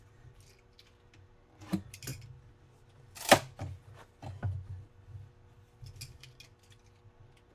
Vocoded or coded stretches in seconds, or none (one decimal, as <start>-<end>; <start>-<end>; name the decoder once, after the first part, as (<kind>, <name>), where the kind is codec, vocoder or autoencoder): none

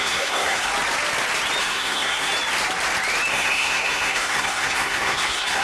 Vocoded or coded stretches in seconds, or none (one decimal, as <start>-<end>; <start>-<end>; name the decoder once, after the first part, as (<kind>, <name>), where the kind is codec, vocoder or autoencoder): 0.0-0.7 (codec, SNAC); 1.6-2.3; 3.3-5.6

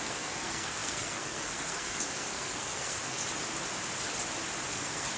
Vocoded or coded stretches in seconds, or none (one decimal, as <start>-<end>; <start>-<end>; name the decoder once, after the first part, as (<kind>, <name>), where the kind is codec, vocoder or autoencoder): 0.0-3.2 (codec, SNAC); 4.7-5.2

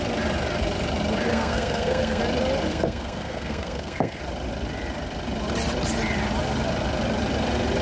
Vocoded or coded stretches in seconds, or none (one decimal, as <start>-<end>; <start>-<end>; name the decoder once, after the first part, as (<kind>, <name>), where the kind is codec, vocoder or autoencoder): 1.3-2.2 (codec, SNAC); 2.7-4.2

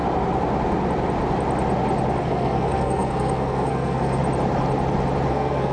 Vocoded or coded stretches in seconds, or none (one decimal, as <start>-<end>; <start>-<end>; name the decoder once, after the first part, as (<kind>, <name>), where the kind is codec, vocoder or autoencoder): 2.2-4.2 (codec, SNAC); 5.3-5.7